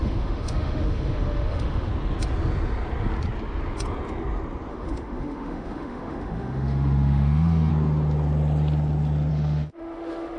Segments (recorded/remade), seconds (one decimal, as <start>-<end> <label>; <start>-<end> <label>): 0.0-1.9 remade; 1.9-4.7 recorded; 4.7-7.7 remade; 7.7-9.3 recorded; 9.3-10.4 remade